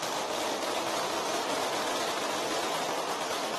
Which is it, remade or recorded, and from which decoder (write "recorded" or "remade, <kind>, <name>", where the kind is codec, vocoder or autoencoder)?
recorded